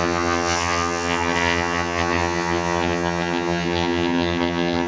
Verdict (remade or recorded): remade